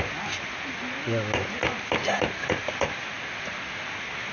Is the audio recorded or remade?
recorded